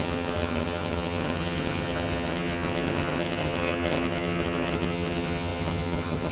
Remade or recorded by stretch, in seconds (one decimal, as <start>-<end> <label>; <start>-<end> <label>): 0.0-6.3 remade